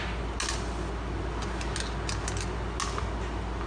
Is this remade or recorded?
recorded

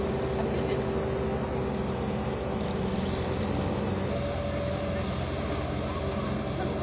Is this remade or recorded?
recorded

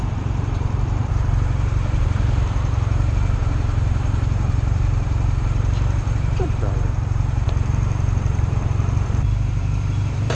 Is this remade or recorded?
remade